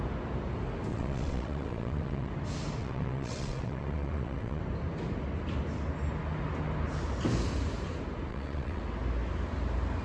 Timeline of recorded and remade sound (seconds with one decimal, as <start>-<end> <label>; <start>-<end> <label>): 0.0-0.9 recorded; 0.9-2.3 remade; 2.3-2.8 recorded; 2.8-4.6 remade; 4.6-8.3 recorded; 8.3-8.8 remade; 8.8-10.0 recorded